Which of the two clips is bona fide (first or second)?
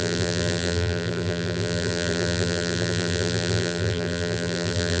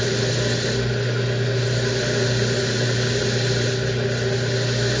second